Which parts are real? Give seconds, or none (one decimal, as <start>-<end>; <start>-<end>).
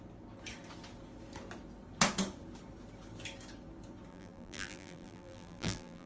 0.0-4.1